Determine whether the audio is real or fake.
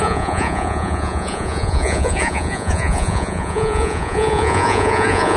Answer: fake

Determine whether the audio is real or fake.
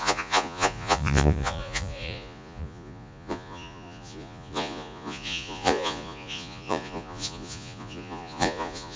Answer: fake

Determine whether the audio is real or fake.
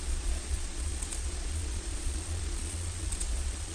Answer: fake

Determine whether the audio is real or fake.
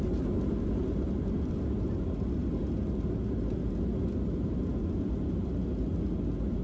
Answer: real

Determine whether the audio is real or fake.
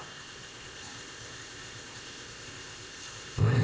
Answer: fake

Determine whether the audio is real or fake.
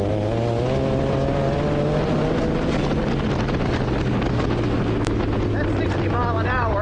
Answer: real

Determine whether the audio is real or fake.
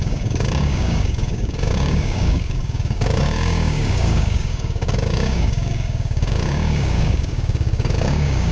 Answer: fake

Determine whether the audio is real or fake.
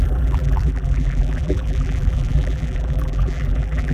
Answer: fake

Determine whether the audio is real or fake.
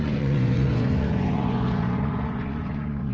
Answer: fake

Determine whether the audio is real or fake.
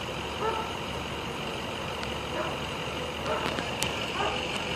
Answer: real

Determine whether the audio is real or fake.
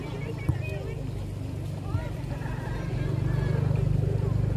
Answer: real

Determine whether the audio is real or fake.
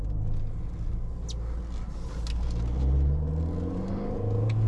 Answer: real